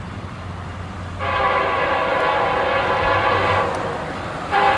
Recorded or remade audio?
remade